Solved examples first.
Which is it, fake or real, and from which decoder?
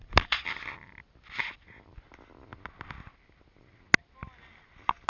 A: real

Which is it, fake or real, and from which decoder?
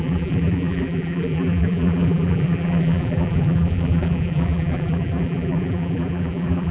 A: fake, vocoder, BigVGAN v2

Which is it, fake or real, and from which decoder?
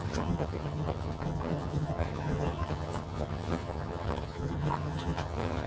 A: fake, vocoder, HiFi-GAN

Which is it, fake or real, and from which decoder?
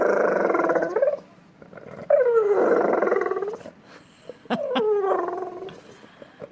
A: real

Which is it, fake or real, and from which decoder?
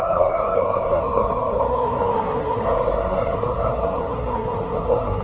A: fake, codec, SNAC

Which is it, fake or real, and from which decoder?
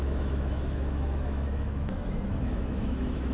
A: fake, autoencoder, DAC-VAE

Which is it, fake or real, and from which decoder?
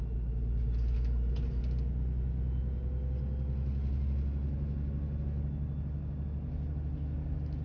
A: real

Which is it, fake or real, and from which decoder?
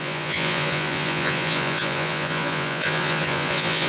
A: fake, vocoder, Vocos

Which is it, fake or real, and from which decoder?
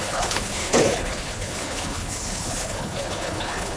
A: fake, codec, HILCodec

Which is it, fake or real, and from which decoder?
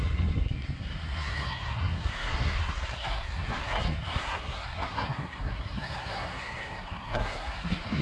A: fake, codec, SNAC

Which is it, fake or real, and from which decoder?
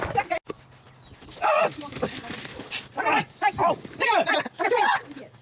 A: real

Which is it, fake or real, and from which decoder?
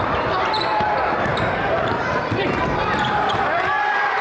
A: fake, vocoder, BigVGAN v2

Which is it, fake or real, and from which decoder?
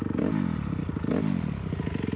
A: real